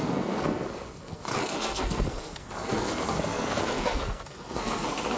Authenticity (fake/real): fake